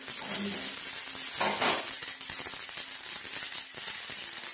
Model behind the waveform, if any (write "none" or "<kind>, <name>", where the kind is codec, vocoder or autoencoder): none